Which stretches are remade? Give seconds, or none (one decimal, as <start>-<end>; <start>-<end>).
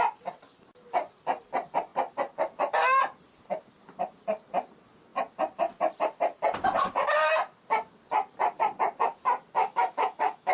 9.6-10.5